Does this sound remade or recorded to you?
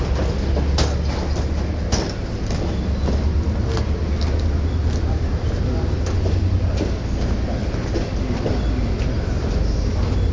recorded